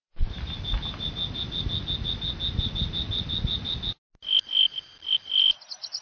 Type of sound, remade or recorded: recorded